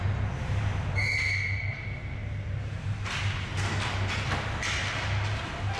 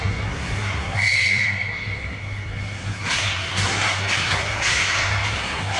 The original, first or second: first